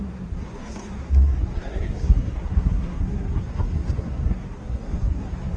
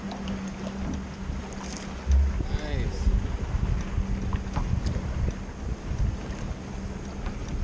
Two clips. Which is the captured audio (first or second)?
second